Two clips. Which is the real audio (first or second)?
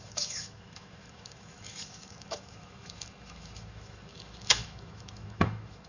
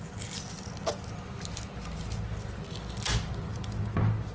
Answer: second